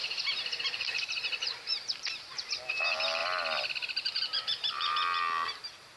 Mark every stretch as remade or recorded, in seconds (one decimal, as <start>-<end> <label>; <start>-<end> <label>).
0.0-3.2 remade; 3.2-4.2 recorded; 4.2-5.0 remade; 5.0-5.6 recorded; 5.6-6.0 remade